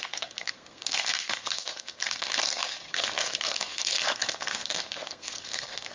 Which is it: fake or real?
fake